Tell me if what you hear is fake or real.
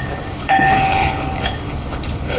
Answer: fake